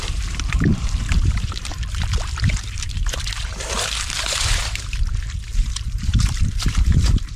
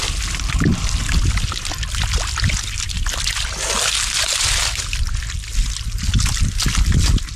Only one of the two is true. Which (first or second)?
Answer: second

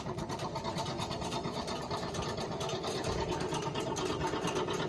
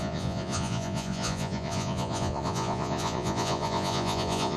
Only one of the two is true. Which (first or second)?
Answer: first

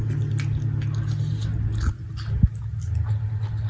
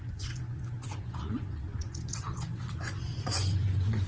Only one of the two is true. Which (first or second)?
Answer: first